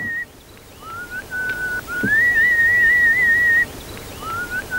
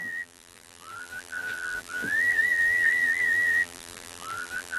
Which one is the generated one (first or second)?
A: second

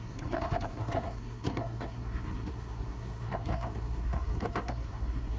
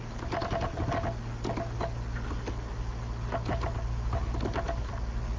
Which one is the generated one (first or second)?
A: first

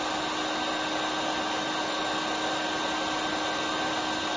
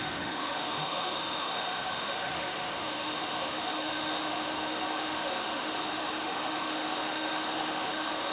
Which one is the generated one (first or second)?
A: second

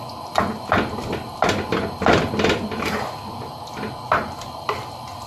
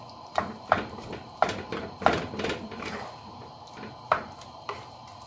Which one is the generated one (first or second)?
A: second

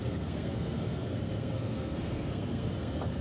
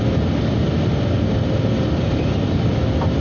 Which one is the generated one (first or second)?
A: first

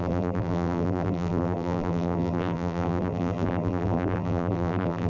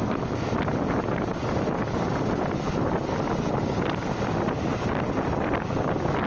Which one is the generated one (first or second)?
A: first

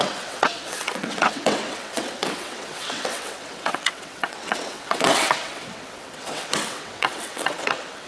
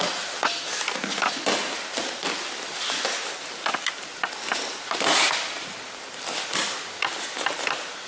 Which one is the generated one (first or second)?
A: first